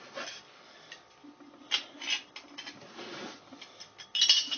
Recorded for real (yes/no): yes